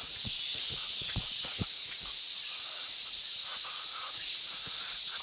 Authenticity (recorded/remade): remade